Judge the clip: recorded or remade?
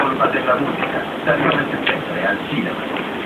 remade